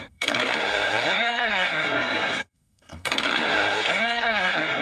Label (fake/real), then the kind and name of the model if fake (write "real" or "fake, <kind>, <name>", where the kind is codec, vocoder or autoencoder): fake, codec, SNAC